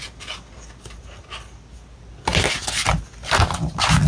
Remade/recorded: recorded